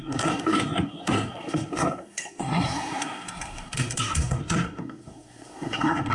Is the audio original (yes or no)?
no